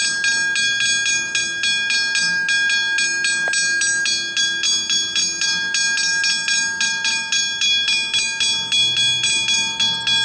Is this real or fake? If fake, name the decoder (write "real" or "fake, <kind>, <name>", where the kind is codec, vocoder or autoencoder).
real